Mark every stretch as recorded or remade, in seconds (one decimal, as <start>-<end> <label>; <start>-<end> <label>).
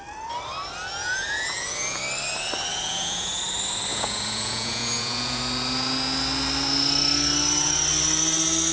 0.0-1.0 recorded; 1.0-2.0 remade; 2.0-2.7 recorded; 2.7-3.4 remade; 3.4-3.9 recorded; 3.9-5.4 remade; 5.4-8.7 recorded